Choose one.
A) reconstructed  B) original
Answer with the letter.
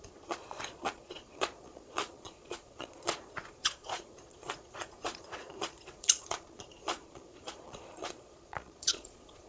A